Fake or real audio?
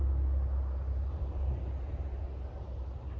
real